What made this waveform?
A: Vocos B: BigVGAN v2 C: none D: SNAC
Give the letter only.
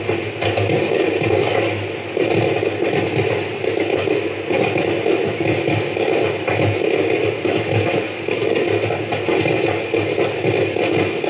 C